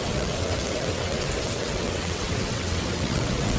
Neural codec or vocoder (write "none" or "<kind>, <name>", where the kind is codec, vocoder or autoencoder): vocoder, WaveNeXt